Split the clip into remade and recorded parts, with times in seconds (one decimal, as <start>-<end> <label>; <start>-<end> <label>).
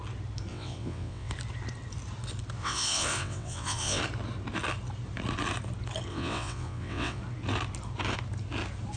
0.0-0.5 recorded; 0.5-1.3 remade; 1.3-2.6 recorded; 2.6-4.0 remade; 4.0-6.1 recorded; 6.1-7.2 remade; 7.2-9.0 recorded